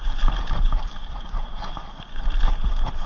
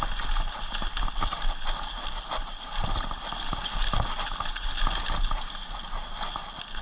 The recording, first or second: second